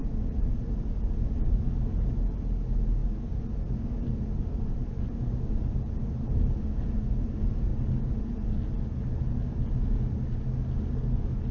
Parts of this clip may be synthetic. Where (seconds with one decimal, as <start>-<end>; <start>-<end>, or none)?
none